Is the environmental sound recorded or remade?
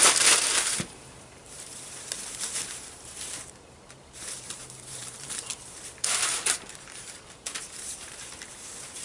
remade